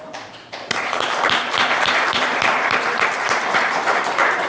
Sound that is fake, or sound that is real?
fake